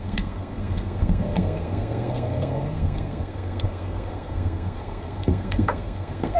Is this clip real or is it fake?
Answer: fake